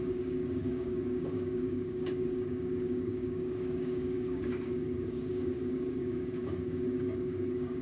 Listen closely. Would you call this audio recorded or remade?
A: remade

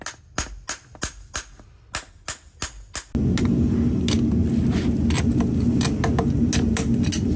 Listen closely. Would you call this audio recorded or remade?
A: recorded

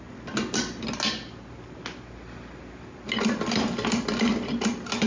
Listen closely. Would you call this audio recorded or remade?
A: recorded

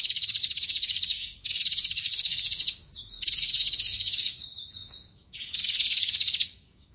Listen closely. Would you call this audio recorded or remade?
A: remade